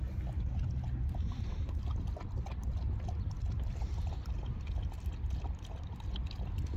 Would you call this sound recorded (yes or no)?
yes